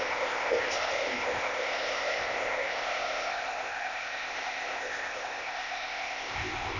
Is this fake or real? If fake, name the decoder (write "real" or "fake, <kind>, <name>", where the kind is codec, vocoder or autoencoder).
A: fake, codec, ZipCodec